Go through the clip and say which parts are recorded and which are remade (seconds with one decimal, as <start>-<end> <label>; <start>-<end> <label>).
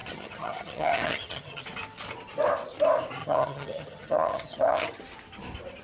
0.0-1.6 remade; 1.6-3.2 recorded; 3.2-5.0 remade; 5.0-5.8 recorded